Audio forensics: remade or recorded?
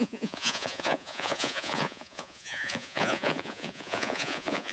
remade